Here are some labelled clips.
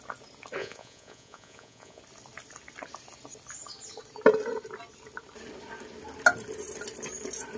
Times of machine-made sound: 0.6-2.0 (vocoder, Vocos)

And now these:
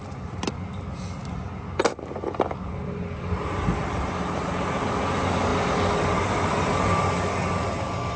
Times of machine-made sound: none

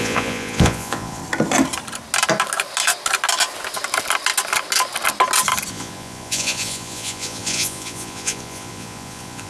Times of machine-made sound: 0.0-1.2 (vocoder, Vocos); 5.7-9.5

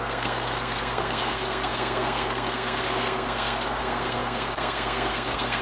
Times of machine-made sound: 0.0-5.6 (codec, SNAC)

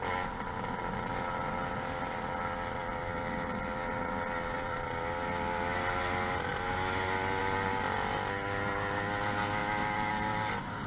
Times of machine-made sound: none

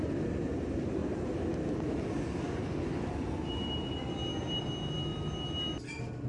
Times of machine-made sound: none

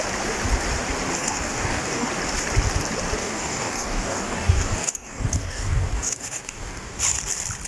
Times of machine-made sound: 1.2-2.1 (codec, DAC); 3.2-7.0

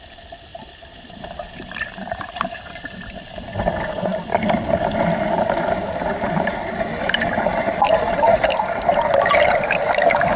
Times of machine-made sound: 0.5-2.8 (vocoder, BigVGAN v2)